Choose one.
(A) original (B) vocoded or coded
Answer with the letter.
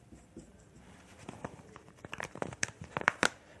B